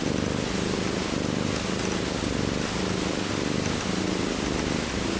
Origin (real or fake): real